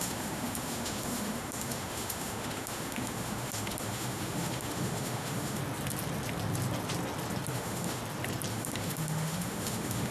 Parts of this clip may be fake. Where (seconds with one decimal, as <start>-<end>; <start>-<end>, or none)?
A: 0.0-5.6; 7.5-8.0; 8.5-10.1

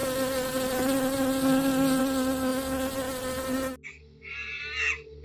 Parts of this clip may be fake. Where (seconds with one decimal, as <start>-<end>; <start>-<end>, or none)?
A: none

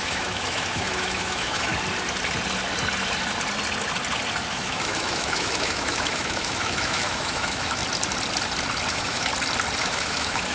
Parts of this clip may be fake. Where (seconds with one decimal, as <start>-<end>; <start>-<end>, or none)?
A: 0.0-1.7; 4.5-7.8; 8.9-9.3; 9.8-10.5

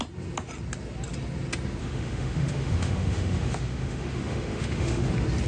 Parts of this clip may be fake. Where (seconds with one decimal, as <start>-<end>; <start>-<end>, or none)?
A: 1.8-5.1

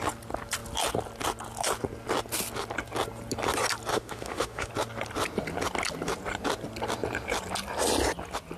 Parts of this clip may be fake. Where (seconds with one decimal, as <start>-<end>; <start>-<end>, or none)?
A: 3.9-4.7